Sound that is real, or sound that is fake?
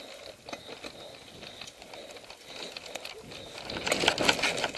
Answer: real